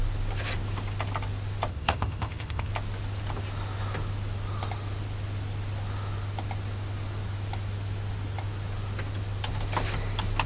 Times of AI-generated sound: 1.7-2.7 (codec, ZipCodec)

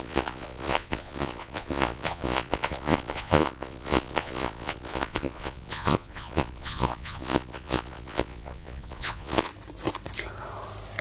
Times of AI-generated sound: 0.0-9.5 (vocoder, Vocos)

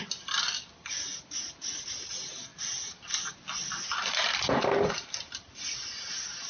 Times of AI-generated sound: none

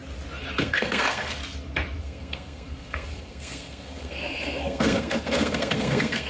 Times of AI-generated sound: 0.6-1.4 (codec, SNAC); 2.0-6.3

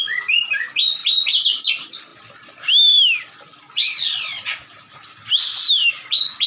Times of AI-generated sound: 1.0-1.7 (vocoder, BigVGAN v2); 2.1-5.9

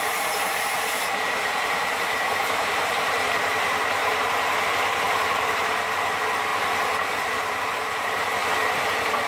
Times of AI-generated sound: 0.0-4.0 (vocoder, BigVGAN v2); 4.6-8.4

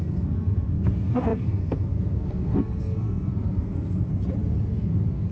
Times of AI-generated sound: 0.0-4.1 (codec, SNAC); 4.7-5.3

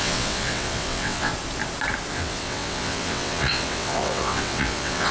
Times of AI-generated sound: 0.0-1.3 (vocoder, WaveNeXt); 2.1-5.1